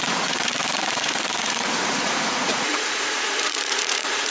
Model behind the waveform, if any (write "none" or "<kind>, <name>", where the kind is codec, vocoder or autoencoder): vocoder, Vocos